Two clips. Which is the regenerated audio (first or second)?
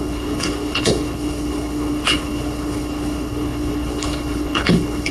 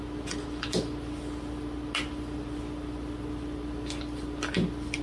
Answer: first